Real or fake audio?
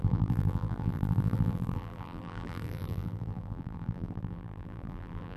fake